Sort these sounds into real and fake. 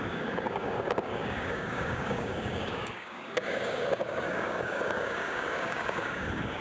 fake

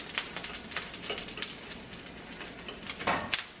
real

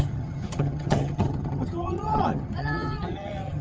fake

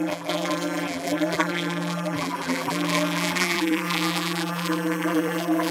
fake